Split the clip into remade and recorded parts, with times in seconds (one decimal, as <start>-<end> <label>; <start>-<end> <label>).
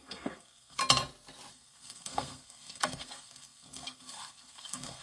0.0-0.8 remade; 0.8-1.5 recorded; 1.5-5.0 remade